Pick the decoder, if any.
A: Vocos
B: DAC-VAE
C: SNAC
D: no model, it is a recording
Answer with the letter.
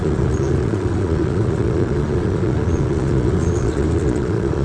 A